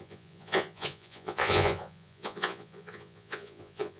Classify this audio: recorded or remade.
remade